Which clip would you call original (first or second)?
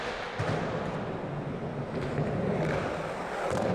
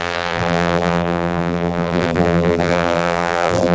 first